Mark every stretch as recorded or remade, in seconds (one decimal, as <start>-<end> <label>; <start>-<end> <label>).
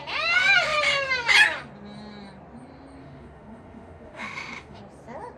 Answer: 0.0-3.0 recorded; 3.0-4.8 remade; 4.8-5.4 recorded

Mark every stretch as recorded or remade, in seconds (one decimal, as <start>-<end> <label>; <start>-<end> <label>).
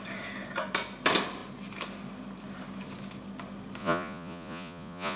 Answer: 0.0-3.8 recorded; 3.8-5.2 remade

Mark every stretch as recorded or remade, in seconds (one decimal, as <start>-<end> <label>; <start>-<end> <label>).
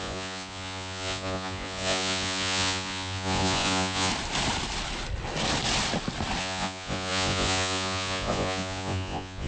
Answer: 0.0-4.1 remade; 4.1-6.4 recorded; 6.4-9.5 remade